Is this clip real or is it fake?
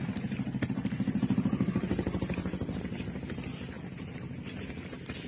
real